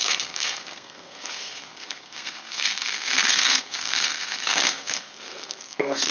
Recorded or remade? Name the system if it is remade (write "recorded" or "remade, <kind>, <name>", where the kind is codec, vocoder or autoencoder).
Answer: remade, codec, SNAC